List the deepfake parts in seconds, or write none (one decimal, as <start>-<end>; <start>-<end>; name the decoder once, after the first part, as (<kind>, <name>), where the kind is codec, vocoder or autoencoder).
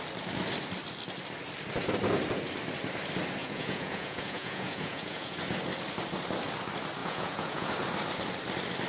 3.4-5.4 (vocoder, Vocos); 7.0-7.7